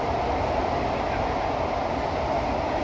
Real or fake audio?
real